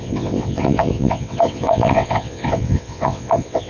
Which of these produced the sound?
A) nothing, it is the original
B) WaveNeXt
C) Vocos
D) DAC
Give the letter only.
B